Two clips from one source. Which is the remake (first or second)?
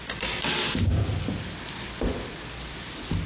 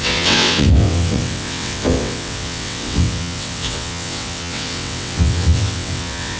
second